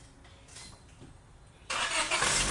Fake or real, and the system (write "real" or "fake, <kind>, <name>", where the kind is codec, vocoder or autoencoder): real